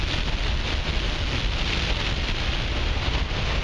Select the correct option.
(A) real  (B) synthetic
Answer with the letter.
A